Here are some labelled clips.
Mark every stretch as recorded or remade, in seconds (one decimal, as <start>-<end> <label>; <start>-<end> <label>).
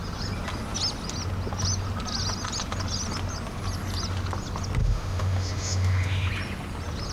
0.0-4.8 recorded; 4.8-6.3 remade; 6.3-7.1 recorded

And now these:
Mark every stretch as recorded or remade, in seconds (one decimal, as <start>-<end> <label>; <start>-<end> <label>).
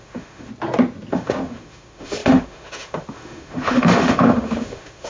0.0-0.5 remade; 0.5-1.1 recorded; 1.1-5.1 remade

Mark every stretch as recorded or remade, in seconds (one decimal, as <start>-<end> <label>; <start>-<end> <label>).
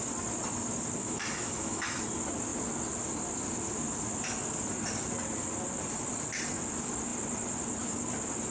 0.0-1.0 recorded; 1.0-2.0 remade; 2.0-8.5 recorded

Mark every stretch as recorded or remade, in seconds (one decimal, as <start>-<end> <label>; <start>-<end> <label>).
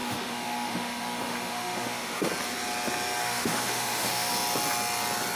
0.0-2.3 remade; 2.3-3.2 recorded; 3.2-4.3 remade; 4.3-5.4 recorded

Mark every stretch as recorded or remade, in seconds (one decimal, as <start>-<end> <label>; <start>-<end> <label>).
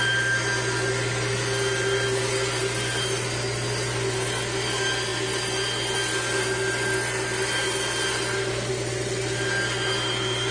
0.0-10.5 recorded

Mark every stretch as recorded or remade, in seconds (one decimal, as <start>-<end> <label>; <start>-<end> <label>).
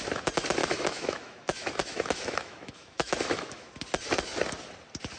0.0-0.6 recorded; 0.6-3.7 remade; 3.7-5.2 recorded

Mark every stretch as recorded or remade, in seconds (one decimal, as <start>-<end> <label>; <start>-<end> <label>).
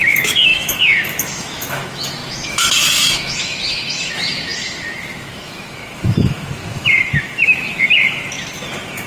0.0-9.1 remade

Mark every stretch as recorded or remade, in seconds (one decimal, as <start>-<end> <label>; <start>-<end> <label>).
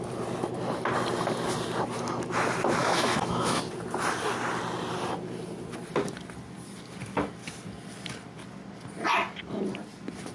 0.0-2.8 recorded; 2.8-3.6 remade; 3.6-10.3 recorded